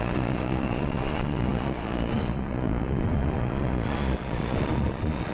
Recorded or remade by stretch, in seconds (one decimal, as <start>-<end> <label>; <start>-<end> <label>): 0.0-5.3 remade